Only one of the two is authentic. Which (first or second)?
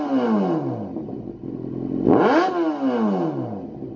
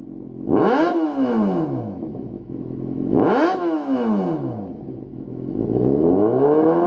first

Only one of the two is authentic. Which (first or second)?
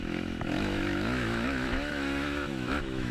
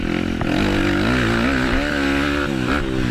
second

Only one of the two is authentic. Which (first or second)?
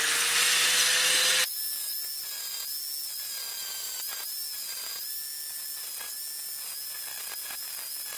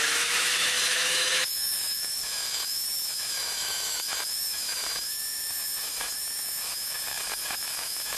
first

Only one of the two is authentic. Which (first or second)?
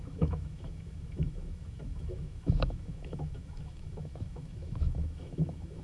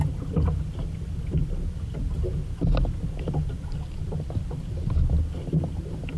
second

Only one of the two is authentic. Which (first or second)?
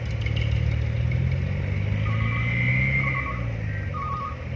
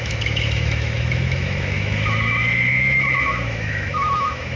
first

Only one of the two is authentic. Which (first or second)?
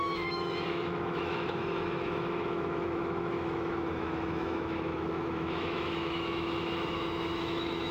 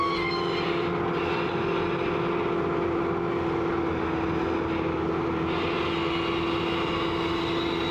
second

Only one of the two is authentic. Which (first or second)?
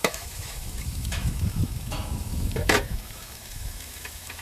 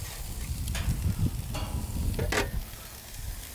second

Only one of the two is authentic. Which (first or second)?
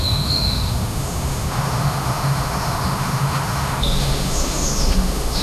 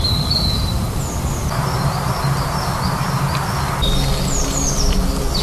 second